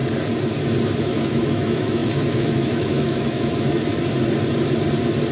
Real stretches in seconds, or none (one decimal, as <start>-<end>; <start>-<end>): 0.0-1.0; 3.9-5.3

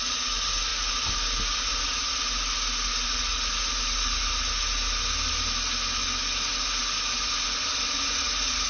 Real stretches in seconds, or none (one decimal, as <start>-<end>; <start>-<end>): 0.0-8.7

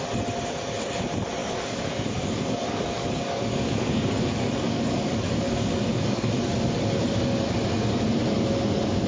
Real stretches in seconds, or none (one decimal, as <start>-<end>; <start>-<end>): 0.0-1.4; 6.3-9.1

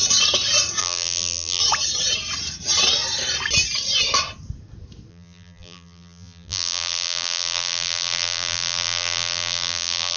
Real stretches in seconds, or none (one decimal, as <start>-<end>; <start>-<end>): 0.0-0.8; 1.6-5.1

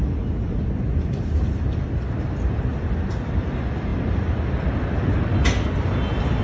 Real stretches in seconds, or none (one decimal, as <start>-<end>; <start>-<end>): 0.0-6.4

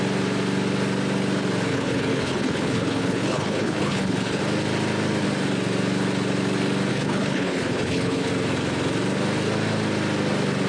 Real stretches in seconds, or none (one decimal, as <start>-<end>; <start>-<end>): 0.0-1.7; 4.4-6.9; 8.3-10.7

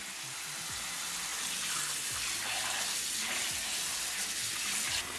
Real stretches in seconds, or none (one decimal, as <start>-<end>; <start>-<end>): 0.0-5.2

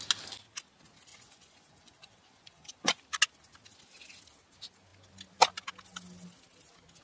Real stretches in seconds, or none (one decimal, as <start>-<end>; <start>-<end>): 0.0-1.1; 3.0-7.0